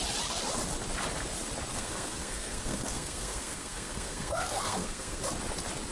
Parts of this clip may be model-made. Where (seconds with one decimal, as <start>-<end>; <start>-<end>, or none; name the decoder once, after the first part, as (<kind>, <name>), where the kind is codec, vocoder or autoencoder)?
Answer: 1.7-5.2 (codec, SNAC)